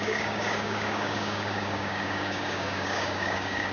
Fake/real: fake